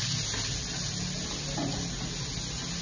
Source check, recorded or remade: recorded